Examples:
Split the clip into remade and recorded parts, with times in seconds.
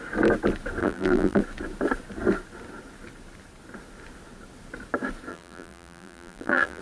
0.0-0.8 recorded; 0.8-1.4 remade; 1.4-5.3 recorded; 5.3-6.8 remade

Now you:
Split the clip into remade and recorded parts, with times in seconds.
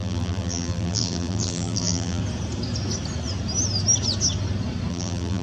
0.0-2.2 remade; 2.2-4.9 recorded; 4.9-5.4 remade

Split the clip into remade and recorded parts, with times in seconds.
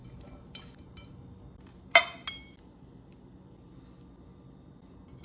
0.0-5.2 remade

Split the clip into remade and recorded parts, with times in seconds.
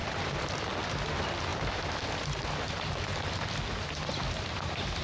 0.0-0.6 remade; 0.6-1.5 recorded; 1.5-4.5 remade; 4.5-5.0 recorded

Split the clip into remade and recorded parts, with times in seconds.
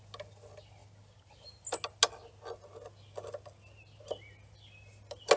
0.0-5.4 recorded